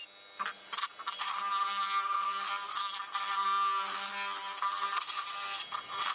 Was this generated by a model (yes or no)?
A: no